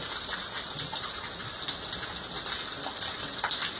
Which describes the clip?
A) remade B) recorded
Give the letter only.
B